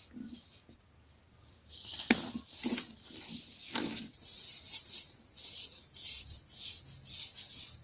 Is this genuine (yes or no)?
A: yes